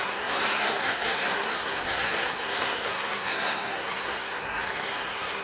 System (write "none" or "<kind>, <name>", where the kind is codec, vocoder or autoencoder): codec, SNAC